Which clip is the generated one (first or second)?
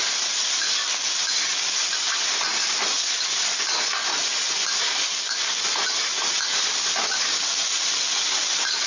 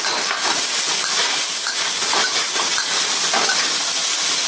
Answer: second